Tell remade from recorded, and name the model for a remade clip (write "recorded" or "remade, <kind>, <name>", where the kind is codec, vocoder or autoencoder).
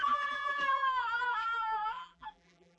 remade, vocoder, BigVGAN v2